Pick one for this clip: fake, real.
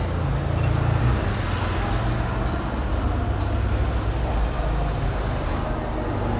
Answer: real